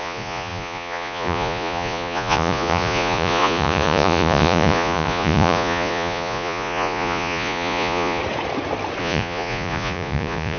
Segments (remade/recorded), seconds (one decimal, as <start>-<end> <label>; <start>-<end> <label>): 0.0-8.2 remade; 8.2-9.0 recorded; 9.0-10.6 remade